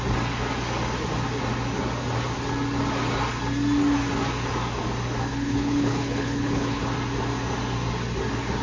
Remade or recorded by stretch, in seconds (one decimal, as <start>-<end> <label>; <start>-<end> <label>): 0.0-5.3 recorded; 5.3-6.8 remade; 6.8-8.6 recorded